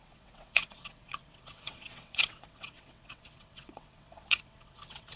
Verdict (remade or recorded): remade